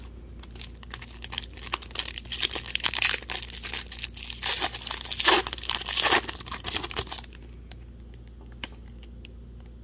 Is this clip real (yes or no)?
yes